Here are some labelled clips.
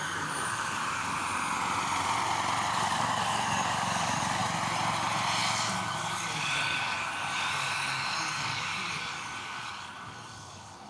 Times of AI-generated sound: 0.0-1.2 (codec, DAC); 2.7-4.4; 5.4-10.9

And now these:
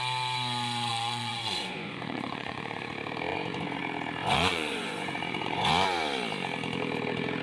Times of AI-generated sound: 0.9-2.9 (vocoder, Vocos); 3.3-3.8; 4.2-5.7

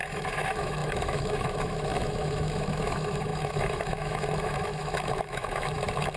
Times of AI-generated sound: 0.0-6.2 (autoencoder, DAC-VAE)

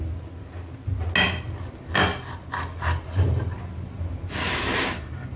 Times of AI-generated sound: 2.1-5.4 (vocoder, BigVGAN v2)